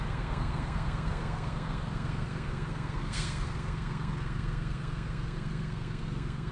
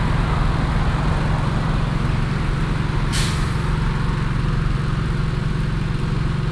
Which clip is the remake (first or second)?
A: first